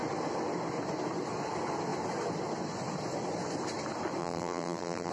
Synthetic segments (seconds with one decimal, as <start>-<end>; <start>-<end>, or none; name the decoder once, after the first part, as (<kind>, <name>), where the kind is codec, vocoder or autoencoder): 4.2-5.1 (vocoder, BigVGAN v2)